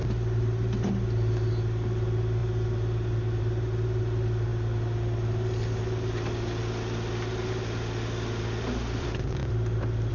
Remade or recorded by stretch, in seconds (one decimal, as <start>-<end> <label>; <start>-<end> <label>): 0.0-10.1 recorded